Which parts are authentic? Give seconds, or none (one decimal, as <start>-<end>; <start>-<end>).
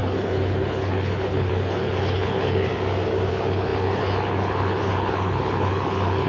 2.7-3.3